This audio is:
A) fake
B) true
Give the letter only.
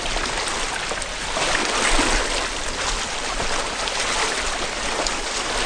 B